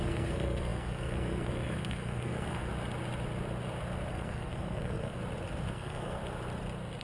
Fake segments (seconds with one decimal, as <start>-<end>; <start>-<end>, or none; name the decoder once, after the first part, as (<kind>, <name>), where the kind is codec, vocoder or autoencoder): 0.0-2.7 (codec, SNAC); 4.1-5.2; 5.7-6.2